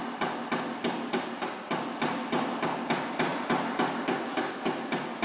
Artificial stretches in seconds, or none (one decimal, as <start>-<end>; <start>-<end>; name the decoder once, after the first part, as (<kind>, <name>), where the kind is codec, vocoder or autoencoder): none